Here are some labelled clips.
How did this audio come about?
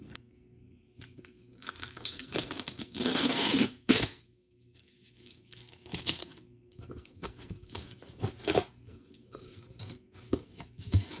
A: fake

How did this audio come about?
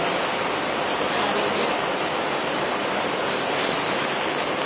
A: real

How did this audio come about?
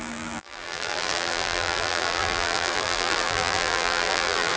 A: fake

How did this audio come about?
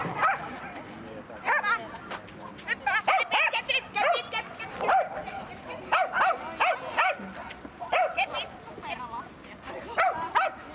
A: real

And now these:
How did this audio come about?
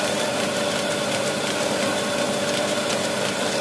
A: real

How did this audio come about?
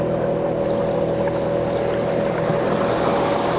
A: real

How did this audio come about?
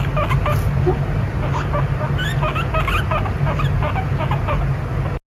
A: real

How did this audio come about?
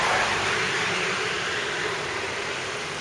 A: real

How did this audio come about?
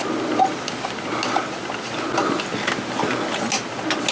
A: real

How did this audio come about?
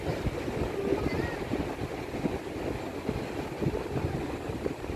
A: real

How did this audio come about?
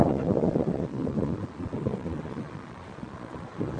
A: fake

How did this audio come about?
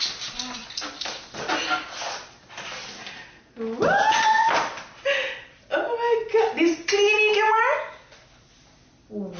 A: real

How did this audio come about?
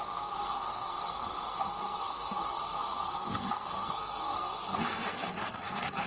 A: fake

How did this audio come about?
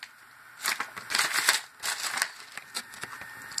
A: real